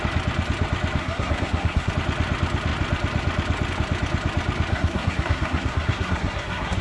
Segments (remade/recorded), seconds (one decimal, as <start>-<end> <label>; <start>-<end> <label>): 0.0-1.0 recorded; 1.0-1.9 remade; 1.9-4.7 recorded; 4.7-6.8 remade